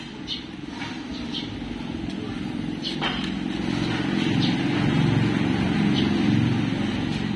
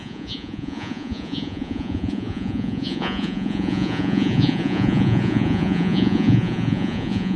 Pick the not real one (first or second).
second